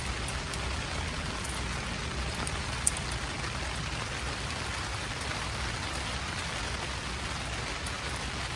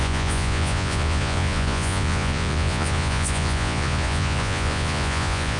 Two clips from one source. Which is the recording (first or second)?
first